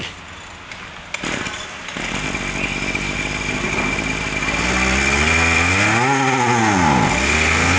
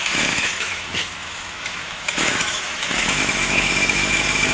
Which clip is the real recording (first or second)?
first